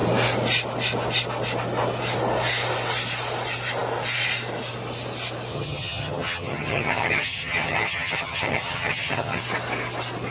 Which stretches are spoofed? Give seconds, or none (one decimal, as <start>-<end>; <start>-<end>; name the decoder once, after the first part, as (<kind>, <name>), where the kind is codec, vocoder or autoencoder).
5.5-9.4 (vocoder, HiFi-GAN)